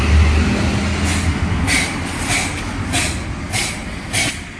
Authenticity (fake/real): real